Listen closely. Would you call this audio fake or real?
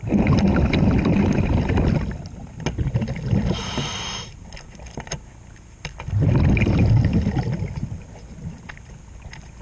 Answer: real